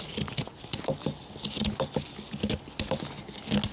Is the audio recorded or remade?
recorded